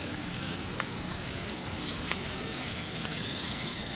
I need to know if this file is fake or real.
fake